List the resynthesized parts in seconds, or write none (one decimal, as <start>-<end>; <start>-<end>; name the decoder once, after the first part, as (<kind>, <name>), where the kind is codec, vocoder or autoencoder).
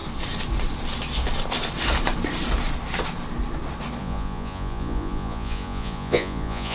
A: 4.0-6.7 (vocoder, Vocos)